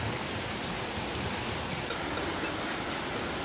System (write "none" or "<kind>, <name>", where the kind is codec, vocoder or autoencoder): none